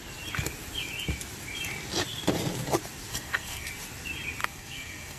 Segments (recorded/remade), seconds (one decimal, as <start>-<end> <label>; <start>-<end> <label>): 0.0-3.1 recorded; 3.1-3.7 remade; 3.7-4.4 recorded; 4.4-5.2 remade